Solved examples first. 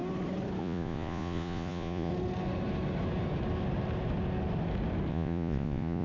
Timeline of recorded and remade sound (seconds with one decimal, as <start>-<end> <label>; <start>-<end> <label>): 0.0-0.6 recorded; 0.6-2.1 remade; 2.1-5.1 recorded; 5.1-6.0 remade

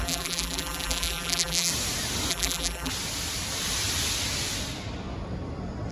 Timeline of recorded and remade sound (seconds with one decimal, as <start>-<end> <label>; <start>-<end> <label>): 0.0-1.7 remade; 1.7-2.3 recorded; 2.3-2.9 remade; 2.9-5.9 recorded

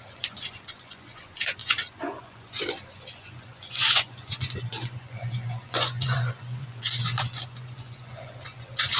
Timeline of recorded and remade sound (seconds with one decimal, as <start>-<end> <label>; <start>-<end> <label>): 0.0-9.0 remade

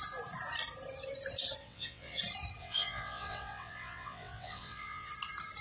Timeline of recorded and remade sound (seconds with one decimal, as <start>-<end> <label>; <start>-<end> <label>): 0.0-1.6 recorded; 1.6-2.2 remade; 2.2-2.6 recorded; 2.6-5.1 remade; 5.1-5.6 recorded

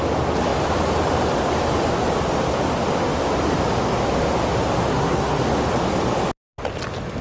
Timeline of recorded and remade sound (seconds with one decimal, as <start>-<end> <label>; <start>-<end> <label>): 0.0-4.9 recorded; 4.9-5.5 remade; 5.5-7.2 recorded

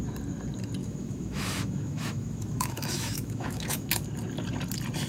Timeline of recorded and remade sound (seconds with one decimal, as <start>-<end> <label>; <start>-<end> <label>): 0.0-0.8 recorded; 0.8-3.9 remade; 3.9-5.1 recorded

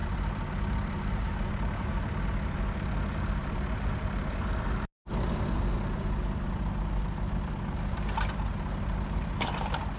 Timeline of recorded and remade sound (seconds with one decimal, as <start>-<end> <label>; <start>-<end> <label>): 0.0-10.0 recorded

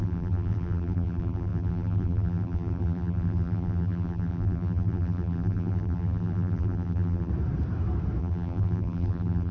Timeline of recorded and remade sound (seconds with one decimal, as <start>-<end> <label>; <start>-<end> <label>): 0.0-7.3 remade; 7.3-8.2 recorded; 8.2-9.5 remade